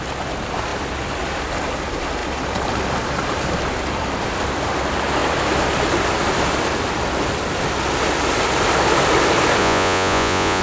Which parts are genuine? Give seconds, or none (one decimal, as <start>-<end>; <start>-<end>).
0.0-9.6

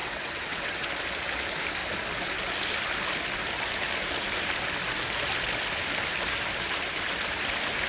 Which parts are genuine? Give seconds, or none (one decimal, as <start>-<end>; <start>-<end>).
0.9-7.9